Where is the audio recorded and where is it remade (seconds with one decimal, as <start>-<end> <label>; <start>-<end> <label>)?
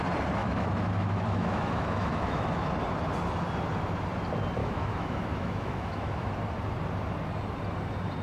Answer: 0.0-0.4 recorded; 0.4-2.7 remade; 2.7-4.6 recorded; 4.6-6.3 remade; 6.3-8.2 recorded